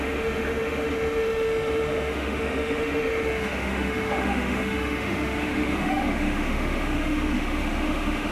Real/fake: fake